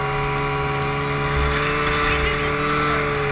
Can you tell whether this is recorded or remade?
recorded